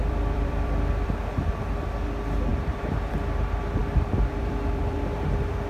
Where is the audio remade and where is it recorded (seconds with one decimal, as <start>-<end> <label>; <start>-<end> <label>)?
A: 0.0-1.5 remade; 1.5-2.5 recorded; 2.5-3.1 remade; 3.1-3.8 recorded; 3.8-5.0 remade; 5.0-5.7 recorded